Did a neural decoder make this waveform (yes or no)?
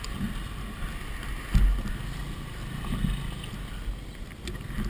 no